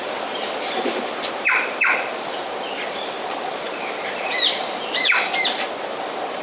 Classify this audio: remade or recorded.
remade